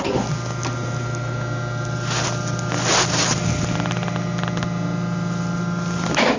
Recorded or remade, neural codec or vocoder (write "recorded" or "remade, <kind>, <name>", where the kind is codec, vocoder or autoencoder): recorded